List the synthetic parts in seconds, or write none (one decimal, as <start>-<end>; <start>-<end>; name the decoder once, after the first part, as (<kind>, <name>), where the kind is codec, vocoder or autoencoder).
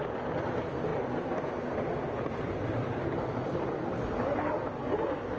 0.9-3.8 (vocoder, BigVGAN v2)